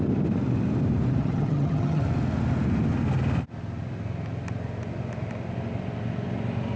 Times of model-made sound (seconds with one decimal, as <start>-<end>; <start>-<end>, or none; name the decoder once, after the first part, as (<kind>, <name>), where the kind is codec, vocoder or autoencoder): 1.2-2.0 (vocoder, HiFi-GAN)